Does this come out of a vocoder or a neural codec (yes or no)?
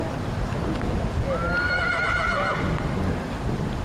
no